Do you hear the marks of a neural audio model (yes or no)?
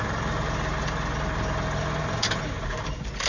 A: no